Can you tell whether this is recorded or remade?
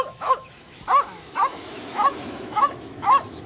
remade